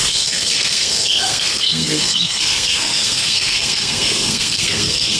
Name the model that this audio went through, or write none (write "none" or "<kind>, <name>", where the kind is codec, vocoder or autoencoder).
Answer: codec, SNAC